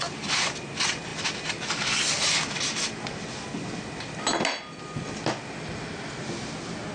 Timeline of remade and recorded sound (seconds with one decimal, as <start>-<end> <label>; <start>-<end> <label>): 0.0-6.9 recorded